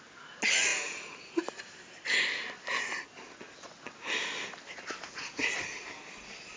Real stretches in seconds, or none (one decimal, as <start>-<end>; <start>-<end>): 0.0-6.6